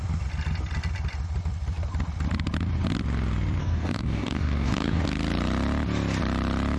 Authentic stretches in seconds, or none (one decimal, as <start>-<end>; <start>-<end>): 0.0-3.6; 5.0-6.8